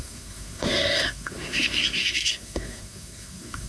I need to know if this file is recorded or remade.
remade